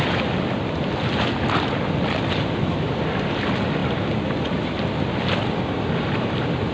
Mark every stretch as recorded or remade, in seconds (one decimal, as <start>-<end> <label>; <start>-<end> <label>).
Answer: 0.0-6.7 recorded